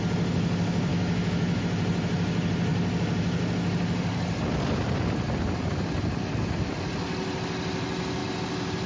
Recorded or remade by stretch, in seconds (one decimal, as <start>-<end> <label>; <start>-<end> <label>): 0.0-0.9 recorded; 0.9-1.6 remade; 1.6-8.9 recorded